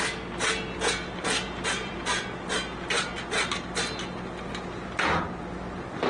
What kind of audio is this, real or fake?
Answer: real